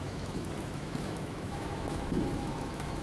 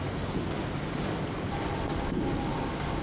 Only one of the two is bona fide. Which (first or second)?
second